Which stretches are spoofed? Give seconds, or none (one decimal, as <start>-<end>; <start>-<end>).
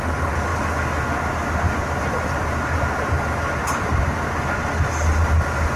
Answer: none